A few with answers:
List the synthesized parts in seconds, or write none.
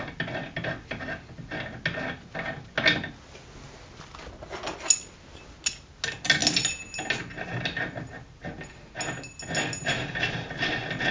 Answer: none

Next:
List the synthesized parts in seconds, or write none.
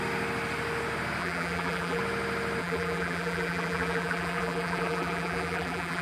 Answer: 1.2-2.0 (vocoder, BigVGAN v2); 2.6-6.0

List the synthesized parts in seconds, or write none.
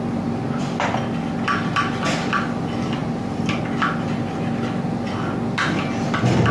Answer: 3.0-3.6 (vocoder, BigVGAN v2)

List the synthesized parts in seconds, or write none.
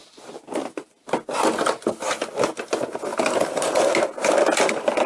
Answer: 0.0-1.4 (vocoder, BigVGAN v2); 3.1-3.8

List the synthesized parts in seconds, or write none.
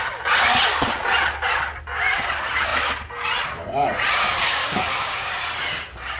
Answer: 4.6-5.3 (codec, DAC)